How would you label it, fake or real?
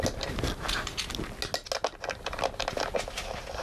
real